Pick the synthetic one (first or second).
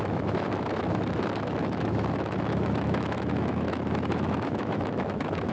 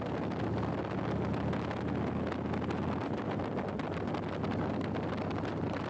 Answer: first